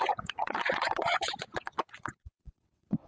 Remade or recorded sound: remade